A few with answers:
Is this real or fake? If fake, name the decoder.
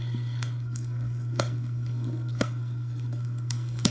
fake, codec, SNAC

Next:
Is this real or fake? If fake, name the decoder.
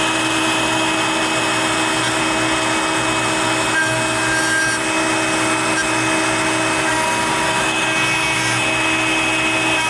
real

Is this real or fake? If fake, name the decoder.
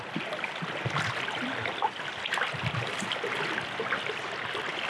real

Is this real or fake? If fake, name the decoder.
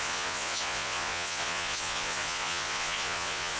fake, vocoder, Vocos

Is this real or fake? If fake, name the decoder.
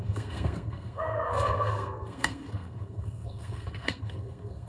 fake, codec, SNAC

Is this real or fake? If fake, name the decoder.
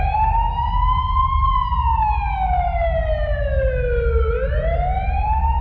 real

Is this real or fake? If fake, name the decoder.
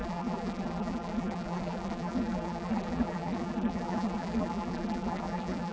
fake, vocoder, BigVGAN v2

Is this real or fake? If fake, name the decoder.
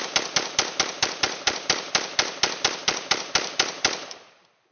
real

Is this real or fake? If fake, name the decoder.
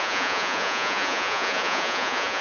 fake, vocoder, Vocos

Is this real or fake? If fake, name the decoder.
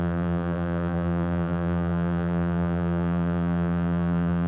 fake, vocoder, BigVGAN v2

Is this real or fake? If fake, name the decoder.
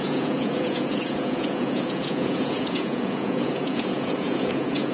fake, vocoder, Vocos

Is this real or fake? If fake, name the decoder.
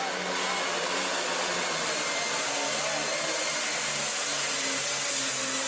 real